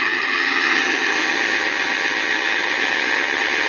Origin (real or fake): fake